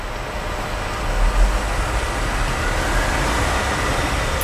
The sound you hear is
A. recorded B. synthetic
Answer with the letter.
A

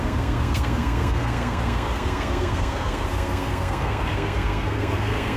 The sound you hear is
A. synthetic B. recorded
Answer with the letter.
A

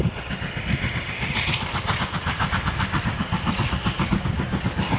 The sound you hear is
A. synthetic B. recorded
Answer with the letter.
B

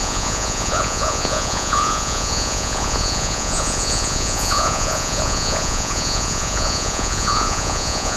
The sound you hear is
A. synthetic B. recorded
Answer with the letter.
A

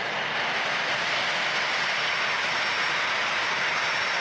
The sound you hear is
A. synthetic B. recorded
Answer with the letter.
B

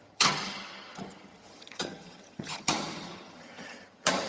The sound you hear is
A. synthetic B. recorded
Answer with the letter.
A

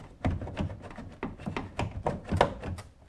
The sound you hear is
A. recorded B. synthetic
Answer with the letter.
A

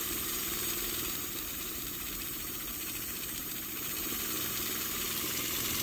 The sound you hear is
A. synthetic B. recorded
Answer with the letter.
A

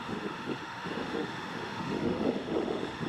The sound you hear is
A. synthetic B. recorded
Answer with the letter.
A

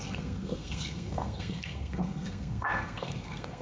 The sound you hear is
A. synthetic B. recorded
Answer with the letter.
A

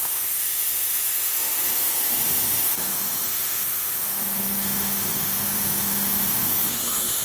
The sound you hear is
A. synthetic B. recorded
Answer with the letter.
A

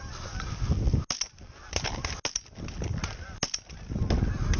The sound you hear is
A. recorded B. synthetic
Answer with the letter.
A